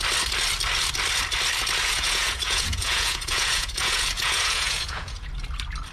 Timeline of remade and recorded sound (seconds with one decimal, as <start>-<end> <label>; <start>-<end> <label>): 0.0-1.8 recorded; 1.8-5.3 remade; 5.3-5.9 recorded